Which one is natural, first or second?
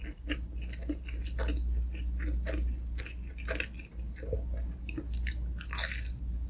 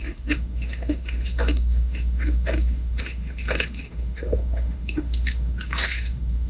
first